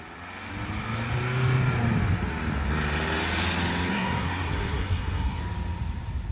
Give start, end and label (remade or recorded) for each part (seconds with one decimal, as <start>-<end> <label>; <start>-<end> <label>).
0.0-3.9 recorded; 3.9-5.4 remade; 5.4-6.3 recorded